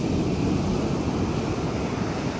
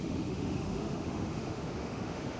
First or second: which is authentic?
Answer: first